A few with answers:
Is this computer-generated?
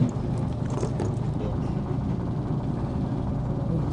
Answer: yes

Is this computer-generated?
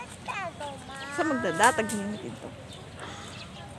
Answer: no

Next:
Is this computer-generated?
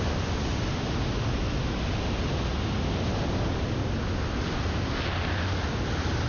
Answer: no